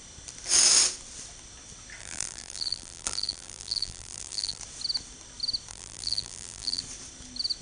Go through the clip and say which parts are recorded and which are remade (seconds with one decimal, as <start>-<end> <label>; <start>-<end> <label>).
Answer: 0.0-2.0 recorded; 2.0-4.6 remade; 4.6-5.7 recorded; 5.7-6.8 remade; 6.8-7.6 recorded